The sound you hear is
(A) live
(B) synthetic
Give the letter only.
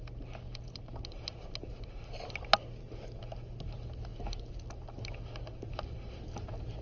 A